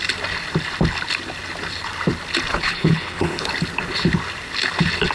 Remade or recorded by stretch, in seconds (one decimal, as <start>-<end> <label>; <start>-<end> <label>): 0.0-2.5 recorded; 2.5-3.5 remade; 3.5-5.1 recorded